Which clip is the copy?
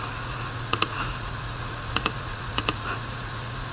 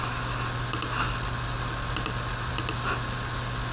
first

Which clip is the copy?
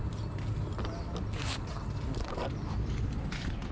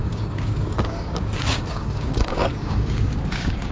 second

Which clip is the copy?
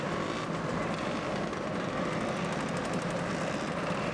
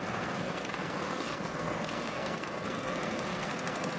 second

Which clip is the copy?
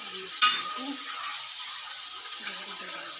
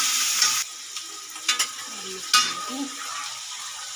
first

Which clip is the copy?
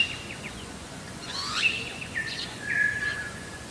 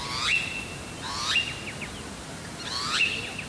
first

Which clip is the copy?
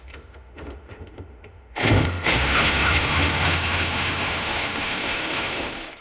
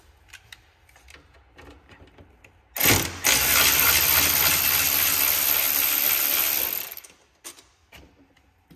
first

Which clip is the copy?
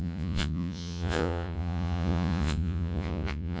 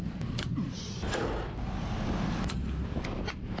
first